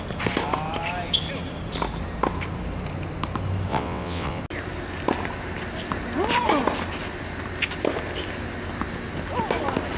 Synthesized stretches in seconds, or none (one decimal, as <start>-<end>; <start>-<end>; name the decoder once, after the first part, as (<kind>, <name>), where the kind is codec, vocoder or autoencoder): 3.7-4.4 (vocoder, WaveNeXt)